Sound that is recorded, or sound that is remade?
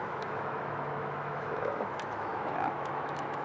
remade